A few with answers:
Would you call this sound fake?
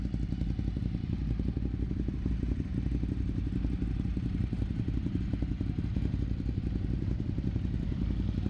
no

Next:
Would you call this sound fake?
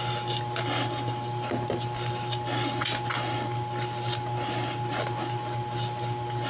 no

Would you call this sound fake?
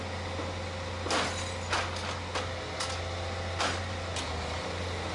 no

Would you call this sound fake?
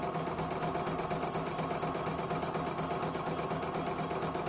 no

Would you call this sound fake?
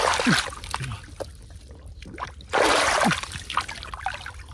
no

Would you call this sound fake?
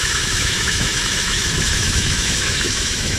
yes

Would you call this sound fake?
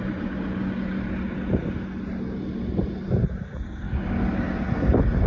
no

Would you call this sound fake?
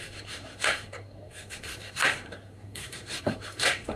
yes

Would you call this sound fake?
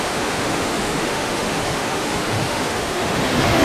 yes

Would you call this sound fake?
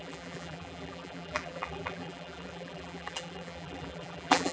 yes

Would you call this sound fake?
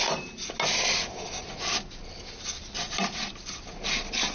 no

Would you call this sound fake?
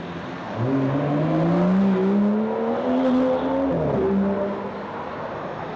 no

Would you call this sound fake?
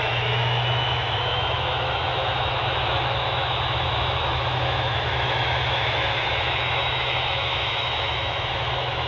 yes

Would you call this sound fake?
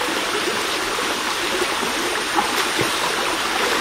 no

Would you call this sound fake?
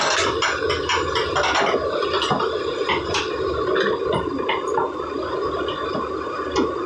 no